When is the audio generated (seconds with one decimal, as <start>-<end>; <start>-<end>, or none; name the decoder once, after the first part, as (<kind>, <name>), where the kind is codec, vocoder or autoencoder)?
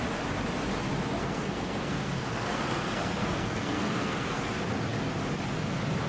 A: 1.2-4.5 (codec, SNAC)